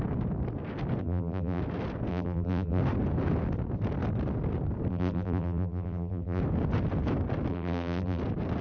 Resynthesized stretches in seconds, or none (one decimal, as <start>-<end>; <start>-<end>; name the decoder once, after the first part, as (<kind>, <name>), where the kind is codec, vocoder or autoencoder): 1.0-1.6 (vocoder, BigVGAN v2); 2.1-2.8; 4.9-6.4; 7.5-8.2